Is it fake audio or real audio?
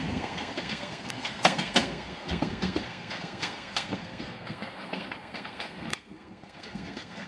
fake